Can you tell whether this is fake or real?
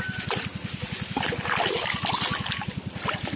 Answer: real